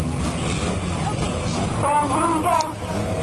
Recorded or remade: recorded